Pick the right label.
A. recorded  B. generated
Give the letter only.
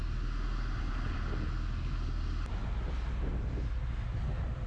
A